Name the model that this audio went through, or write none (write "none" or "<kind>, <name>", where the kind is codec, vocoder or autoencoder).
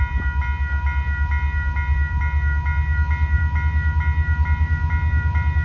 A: none